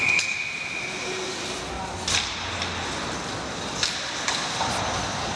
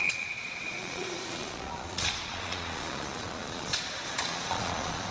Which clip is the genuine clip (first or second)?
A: first